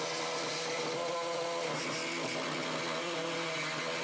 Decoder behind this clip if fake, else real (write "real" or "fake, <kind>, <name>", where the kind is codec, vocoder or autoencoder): real